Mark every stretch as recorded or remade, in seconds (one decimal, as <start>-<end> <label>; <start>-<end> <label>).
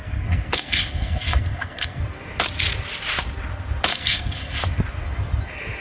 0.0-2.0 remade; 2.0-3.9 recorded; 3.9-4.6 remade; 4.6-5.8 recorded